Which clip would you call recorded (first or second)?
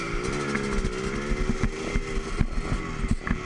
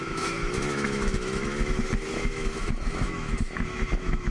first